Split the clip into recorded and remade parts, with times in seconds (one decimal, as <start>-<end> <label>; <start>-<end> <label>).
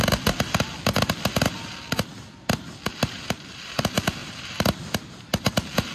0.0-2.9 recorded; 2.9-3.8 remade; 3.8-4.2 recorded; 4.2-5.3 remade; 5.3-5.9 recorded